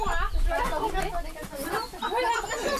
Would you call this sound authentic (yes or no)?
yes